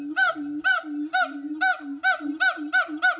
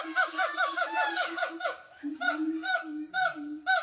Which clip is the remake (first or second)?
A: second